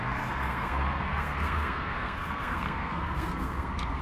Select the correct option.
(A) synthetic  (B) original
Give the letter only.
A